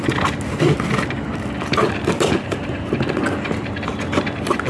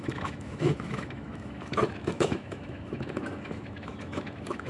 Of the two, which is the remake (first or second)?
second